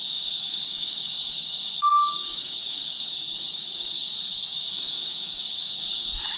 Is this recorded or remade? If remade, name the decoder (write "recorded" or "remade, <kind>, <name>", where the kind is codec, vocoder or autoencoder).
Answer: remade, codec, DAC